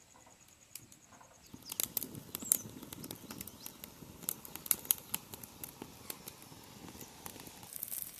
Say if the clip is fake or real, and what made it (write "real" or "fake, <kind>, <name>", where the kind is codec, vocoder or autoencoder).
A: real